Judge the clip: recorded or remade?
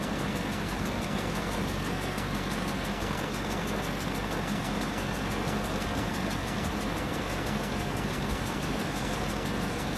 remade